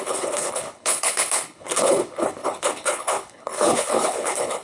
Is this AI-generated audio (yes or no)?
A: yes